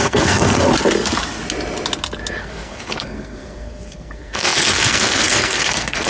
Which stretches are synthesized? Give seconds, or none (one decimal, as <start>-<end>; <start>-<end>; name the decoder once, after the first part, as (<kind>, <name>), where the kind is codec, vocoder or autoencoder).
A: 0.0-0.7 (codec, SNAC); 2.4-6.1